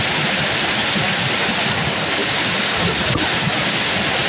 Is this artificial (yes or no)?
no